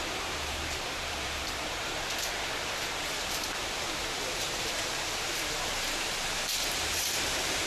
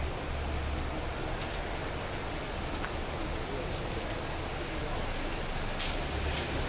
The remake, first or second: first